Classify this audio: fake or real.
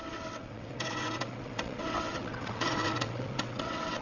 fake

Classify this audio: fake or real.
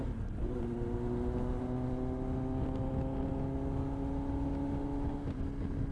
real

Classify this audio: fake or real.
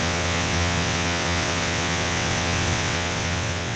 fake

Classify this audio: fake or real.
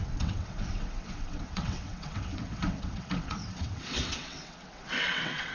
fake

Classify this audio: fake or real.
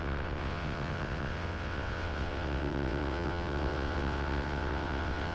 fake